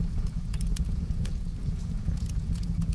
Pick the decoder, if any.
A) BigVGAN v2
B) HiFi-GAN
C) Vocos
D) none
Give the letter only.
C